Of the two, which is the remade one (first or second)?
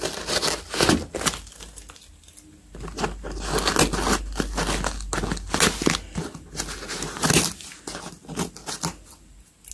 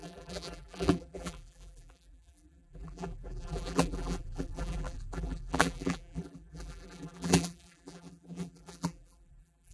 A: second